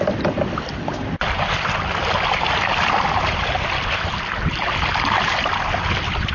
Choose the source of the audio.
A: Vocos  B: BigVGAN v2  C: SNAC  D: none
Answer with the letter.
D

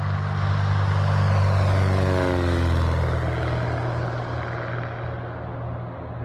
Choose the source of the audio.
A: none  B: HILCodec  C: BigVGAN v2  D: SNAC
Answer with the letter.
A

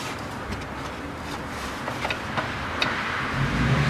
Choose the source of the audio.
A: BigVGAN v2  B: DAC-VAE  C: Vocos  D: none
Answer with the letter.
D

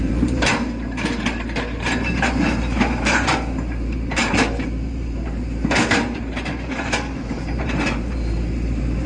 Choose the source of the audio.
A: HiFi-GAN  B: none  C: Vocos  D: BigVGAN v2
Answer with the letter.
D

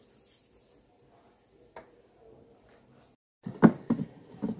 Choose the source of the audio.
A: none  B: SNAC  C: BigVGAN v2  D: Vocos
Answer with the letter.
A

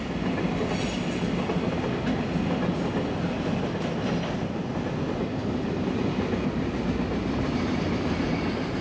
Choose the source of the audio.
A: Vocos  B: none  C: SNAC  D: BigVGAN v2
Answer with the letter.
B